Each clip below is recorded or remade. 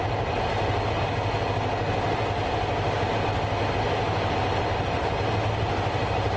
recorded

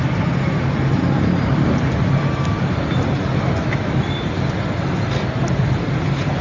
recorded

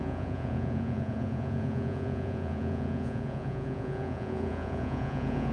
remade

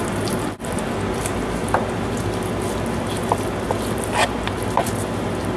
recorded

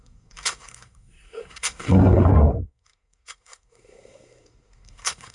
remade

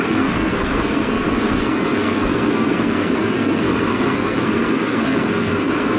remade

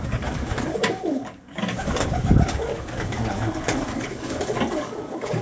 remade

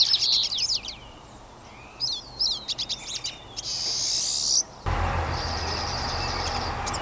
recorded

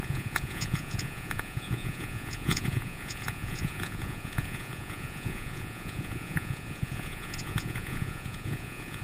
remade